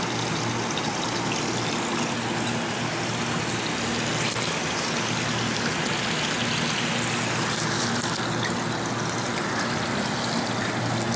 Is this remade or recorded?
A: recorded